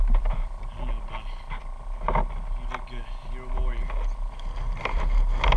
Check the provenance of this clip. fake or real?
real